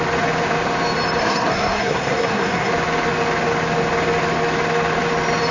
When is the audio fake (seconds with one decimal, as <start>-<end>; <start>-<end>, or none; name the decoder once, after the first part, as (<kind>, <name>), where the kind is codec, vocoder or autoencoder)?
1.2-2.7 (codec, SNAC)